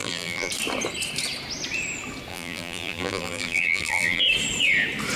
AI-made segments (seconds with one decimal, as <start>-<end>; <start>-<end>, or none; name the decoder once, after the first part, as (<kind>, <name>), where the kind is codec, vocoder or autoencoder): 0.0-0.5 (vocoder, BigVGAN v2); 2.3-4.2